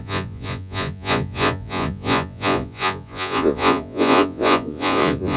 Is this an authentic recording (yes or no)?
no